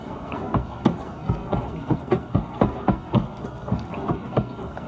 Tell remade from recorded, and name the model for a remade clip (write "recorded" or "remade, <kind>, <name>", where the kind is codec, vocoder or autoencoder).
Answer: remade, codec, SNAC